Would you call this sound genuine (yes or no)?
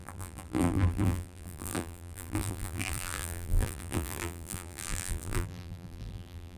no